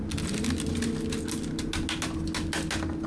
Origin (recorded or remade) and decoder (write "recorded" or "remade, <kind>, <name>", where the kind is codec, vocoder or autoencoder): recorded